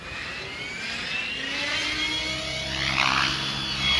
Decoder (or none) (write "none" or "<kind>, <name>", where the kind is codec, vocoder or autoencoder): none